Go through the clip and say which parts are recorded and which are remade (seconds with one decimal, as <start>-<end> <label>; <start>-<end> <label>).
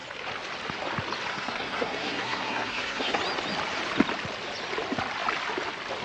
0.0-1.3 recorded; 1.3-3.2 remade; 3.2-6.0 recorded